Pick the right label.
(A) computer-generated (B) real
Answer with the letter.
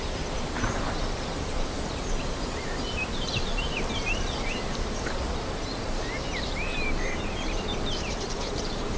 A